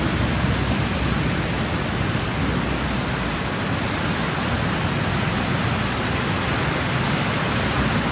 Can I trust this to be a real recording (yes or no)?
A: yes